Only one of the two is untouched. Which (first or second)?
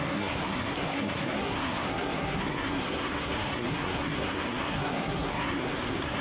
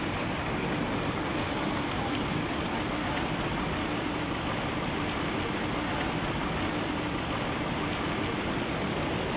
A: second